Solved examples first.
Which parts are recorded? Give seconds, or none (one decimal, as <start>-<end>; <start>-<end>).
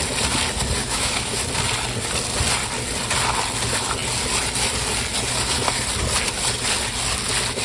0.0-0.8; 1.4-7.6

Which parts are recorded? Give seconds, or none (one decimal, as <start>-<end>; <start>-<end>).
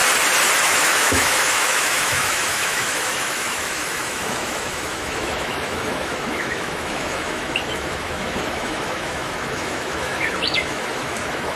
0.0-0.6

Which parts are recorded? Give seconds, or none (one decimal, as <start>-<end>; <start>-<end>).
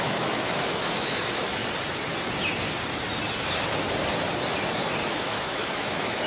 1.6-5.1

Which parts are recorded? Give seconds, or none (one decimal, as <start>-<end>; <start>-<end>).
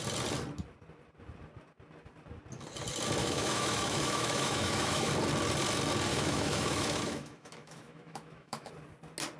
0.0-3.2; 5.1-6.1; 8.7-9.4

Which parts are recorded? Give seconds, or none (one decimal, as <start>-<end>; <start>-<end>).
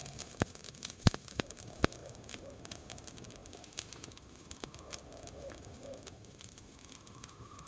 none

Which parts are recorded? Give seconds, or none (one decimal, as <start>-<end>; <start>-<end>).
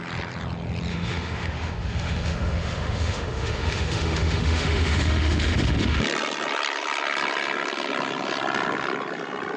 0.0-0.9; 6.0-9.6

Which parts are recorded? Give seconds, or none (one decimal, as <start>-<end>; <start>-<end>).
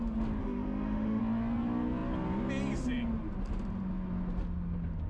0.0-0.4; 1.2-5.1